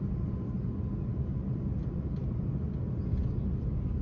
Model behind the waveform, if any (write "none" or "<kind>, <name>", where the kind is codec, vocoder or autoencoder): none